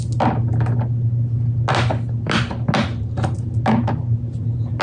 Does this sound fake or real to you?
real